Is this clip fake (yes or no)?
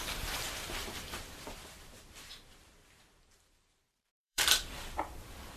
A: yes